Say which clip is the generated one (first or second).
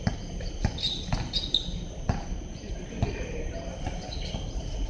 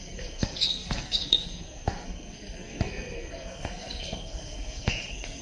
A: second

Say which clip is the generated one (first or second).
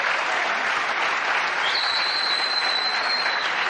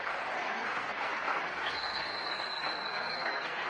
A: second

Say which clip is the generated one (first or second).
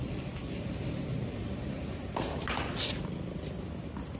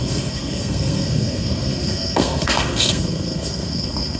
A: second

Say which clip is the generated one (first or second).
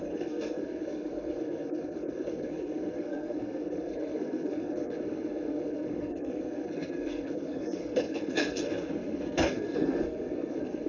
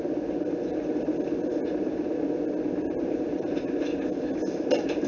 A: first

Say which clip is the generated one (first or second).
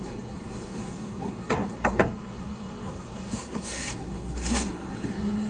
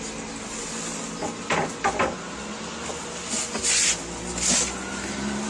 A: first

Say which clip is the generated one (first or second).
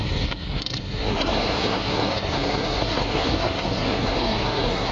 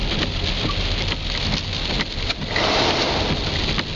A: first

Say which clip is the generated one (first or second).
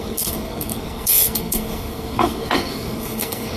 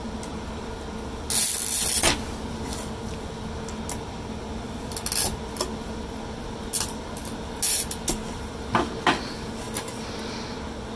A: first